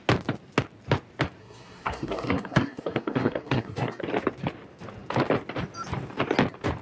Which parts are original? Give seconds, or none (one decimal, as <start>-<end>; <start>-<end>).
0.0-1.4; 4.0-6.8